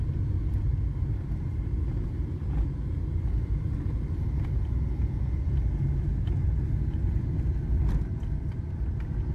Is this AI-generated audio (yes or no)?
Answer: no